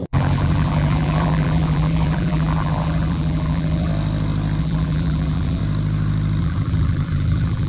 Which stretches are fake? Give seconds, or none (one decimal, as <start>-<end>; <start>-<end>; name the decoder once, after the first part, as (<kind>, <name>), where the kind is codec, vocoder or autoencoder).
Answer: 0.0-3.9 (vocoder, BigVGAN v2); 4.6-5.6; 6.4-7.7

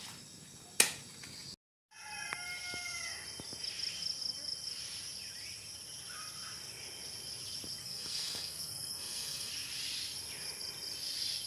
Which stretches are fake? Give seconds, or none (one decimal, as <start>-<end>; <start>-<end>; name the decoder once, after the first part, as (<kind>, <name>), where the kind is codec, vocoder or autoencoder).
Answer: 7.8-9.5 (codec, SNAC)

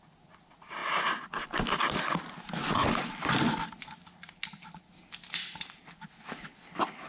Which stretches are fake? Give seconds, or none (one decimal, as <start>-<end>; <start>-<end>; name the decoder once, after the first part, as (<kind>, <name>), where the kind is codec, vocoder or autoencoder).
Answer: none